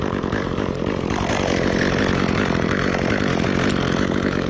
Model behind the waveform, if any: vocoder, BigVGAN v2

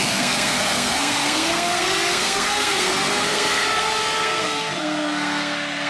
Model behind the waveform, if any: codec, SNAC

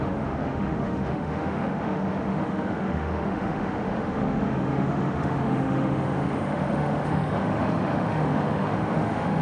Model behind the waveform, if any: autoencoder, DAC-VAE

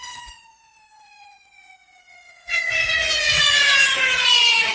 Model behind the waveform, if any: vocoder, Vocos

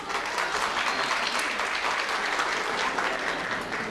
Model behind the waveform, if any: none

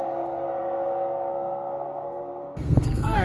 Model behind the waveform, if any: codec, SNAC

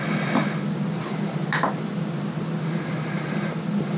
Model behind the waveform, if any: none